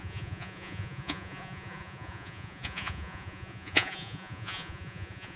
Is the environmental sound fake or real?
fake